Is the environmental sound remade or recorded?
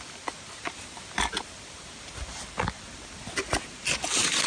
recorded